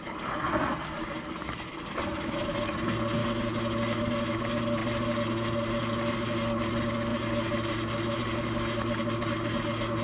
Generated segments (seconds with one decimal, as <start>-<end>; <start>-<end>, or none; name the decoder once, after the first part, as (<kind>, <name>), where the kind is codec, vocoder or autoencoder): none